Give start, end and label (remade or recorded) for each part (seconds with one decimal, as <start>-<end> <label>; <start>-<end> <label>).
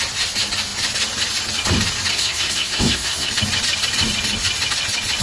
0.0-2.1 recorded; 2.1-3.3 remade; 3.3-5.2 recorded